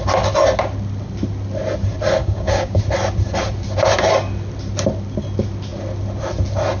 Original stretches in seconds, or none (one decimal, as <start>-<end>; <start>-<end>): 0.0-2.2; 2.8-6.8

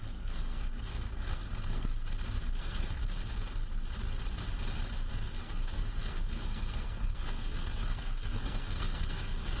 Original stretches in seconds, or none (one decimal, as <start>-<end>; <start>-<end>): 1.9-2.6; 3.0-5.1

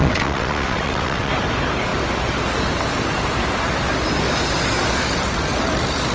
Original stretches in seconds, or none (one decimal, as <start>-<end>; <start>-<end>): 1.3-6.1

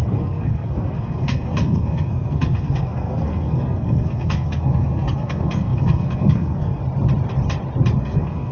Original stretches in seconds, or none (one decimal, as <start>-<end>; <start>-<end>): 6.8-8.0

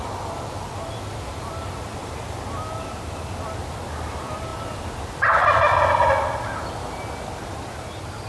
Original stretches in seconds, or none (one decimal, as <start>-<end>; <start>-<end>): 0.0-8.3

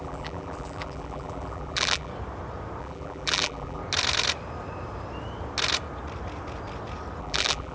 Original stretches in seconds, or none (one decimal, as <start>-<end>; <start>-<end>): 2.1-2.8; 3.8-7.2